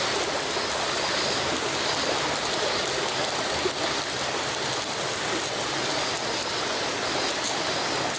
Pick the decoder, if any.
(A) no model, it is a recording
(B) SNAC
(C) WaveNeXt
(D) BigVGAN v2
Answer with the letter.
A